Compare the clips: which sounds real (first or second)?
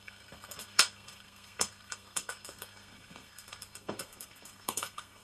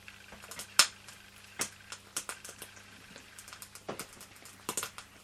second